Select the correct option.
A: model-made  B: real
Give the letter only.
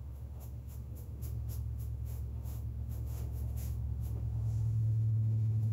A